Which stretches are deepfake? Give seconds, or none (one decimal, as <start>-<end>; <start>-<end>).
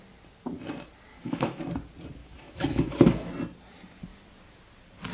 1.1-1.6; 2.2-3.3